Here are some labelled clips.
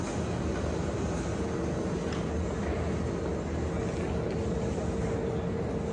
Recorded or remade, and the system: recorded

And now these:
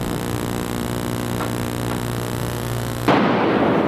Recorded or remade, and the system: recorded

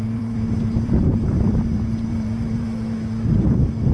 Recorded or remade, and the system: remade, vocoder, BigVGAN v2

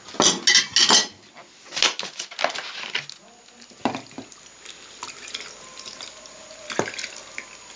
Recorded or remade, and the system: recorded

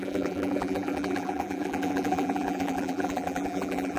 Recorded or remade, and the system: remade, vocoder, BigVGAN v2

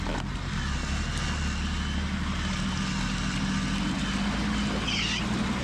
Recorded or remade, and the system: recorded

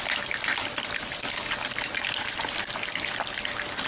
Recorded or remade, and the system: remade, vocoder, BigVGAN v2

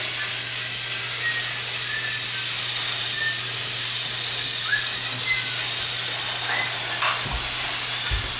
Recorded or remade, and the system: recorded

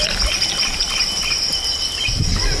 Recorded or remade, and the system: recorded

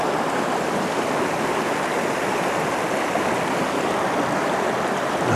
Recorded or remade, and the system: recorded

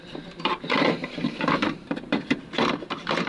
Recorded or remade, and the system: remade, vocoder, BigVGAN v2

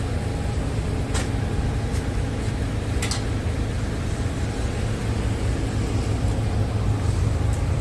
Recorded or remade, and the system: recorded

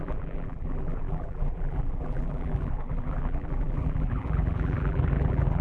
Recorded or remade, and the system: remade, vocoder, BigVGAN v2